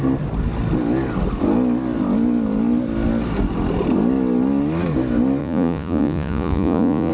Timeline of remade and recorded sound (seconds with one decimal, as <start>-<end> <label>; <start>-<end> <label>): 0.0-5.4 recorded; 5.4-7.1 remade